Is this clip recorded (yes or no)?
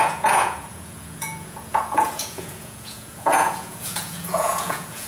no